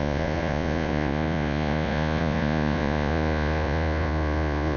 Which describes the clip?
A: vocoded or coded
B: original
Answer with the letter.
A